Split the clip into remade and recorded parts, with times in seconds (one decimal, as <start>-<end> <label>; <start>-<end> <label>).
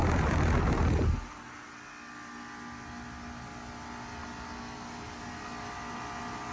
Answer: 0.0-6.5 recorded